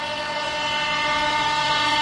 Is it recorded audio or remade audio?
remade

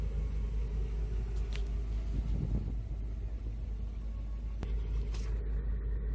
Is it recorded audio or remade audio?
recorded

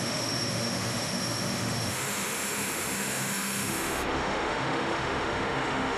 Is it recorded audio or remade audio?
remade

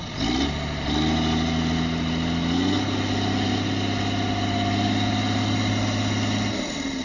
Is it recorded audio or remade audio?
recorded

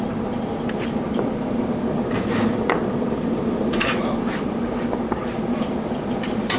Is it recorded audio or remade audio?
remade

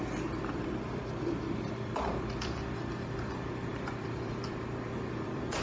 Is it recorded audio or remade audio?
remade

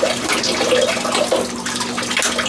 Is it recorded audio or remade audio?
recorded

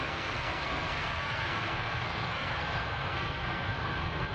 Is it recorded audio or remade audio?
remade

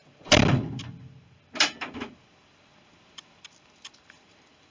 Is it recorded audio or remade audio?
recorded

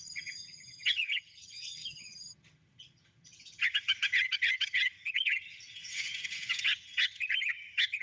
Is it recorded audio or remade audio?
remade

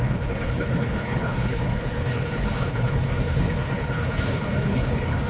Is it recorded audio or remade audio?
remade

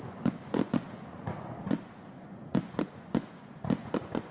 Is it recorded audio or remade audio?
remade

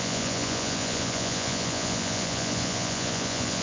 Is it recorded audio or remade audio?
remade